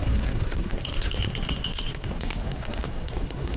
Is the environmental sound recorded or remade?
remade